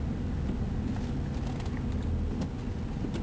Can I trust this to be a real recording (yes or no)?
yes